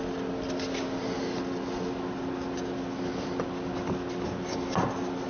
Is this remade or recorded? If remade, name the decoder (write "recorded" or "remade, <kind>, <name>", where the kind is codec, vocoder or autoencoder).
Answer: recorded